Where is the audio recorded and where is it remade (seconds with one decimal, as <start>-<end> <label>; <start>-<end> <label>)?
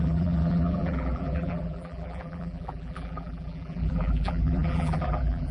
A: 0.0-5.5 remade